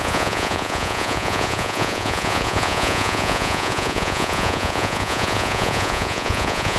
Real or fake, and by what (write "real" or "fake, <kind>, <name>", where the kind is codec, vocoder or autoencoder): fake, vocoder, Vocos